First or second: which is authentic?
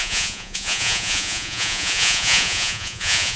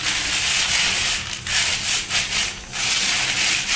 second